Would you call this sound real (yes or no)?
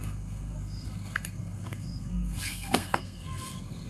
no